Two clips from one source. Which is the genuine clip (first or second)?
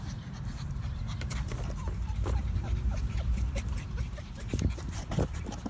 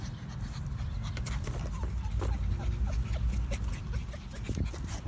second